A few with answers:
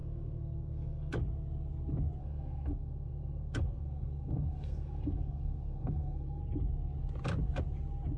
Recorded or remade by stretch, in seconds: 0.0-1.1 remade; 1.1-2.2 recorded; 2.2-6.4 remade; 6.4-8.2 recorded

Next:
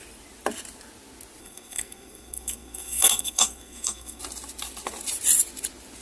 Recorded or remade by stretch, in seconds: 0.0-1.4 recorded; 1.4-4.2 remade; 4.2-6.0 recorded

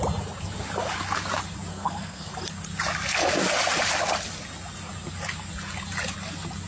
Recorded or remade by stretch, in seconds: 0.0-1.7 recorded; 1.7-2.3 remade; 2.3-6.7 recorded

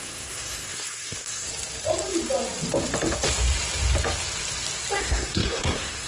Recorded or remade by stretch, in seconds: 0.0-1.5 remade; 1.5-5.0 recorded; 5.0-6.1 remade

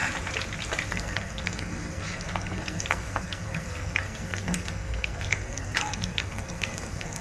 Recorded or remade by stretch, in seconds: 0.0-0.9 recorded; 0.9-7.2 remade

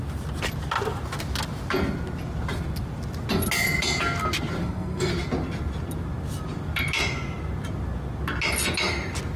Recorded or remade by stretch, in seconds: 0.0-4.6 recorded; 4.6-5.1 remade; 5.1-9.4 recorded